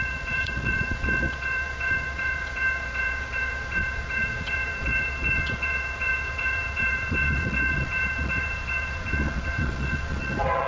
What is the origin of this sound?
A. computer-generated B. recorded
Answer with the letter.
A